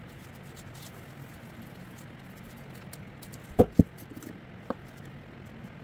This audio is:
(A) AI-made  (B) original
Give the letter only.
B